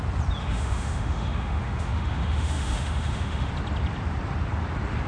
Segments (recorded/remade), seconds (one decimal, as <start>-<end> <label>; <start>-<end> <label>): 0.0-0.4 recorded; 0.4-3.5 remade; 3.5-5.1 recorded